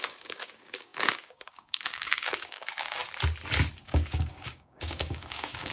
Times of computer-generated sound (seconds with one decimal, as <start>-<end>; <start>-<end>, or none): 0.0-3.0; 3.8-5.7